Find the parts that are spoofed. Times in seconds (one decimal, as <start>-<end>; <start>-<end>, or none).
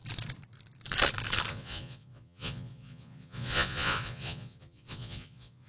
1.5-5.7